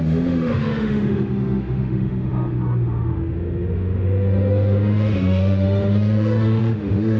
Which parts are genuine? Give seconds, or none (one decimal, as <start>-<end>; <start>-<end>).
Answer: none